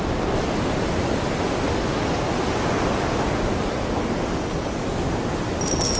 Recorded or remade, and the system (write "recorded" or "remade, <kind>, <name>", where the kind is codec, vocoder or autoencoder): recorded